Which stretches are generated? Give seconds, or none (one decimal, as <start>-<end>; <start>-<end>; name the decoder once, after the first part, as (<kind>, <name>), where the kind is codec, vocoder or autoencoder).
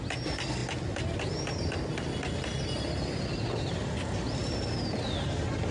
none